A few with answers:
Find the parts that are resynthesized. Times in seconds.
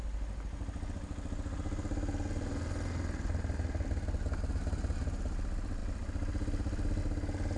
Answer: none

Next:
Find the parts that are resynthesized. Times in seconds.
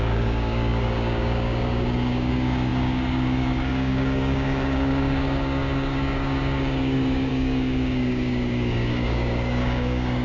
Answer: 0.0-10.2 (codec, DAC)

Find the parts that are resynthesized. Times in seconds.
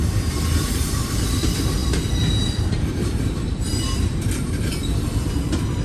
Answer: 0.0-5.8 (vocoder, BigVGAN v2)